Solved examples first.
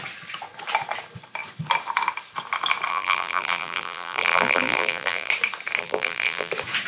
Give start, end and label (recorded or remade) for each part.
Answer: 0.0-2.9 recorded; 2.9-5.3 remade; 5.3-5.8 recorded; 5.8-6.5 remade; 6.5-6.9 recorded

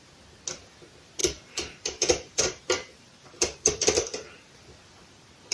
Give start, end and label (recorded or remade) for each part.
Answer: 0.0-1.2 recorded; 1.2-4.5 remade; 4.5-5.5 recorded

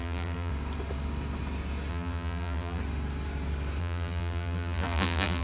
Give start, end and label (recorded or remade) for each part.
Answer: 0.0-0.5 remade; 0.5-1.9 recorded; 1.9-2.8 remade; 2.8-3.8 recorded; 3.8-5.4 remade

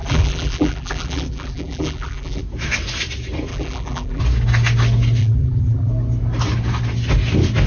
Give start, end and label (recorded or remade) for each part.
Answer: 0.0-2.4 remade; 2.4-3.5 recorded; 3.5-4.2 remade; 4.2-5.2 recorded; 5.2-5.9 remade; 5.9-7.7 recorded

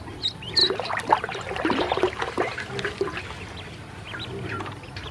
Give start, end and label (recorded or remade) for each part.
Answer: 0.0-0.6 remade; 0.6-3.7 recorded; 3.7-5.1 remade

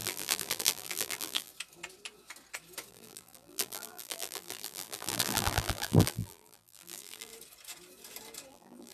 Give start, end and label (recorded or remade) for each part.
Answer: 0.0-1.5 remade; 1.5-2.9 recorded; 2.9-7.3 remade; 7.3-8.5 recorded; 8.5-8.9 remade

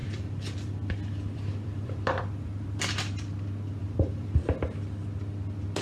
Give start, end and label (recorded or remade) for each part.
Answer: 0.0-2.8 remade; 2.8-3.8 recorded; 3.8-4.4 remade; 4.4-5.8 recorded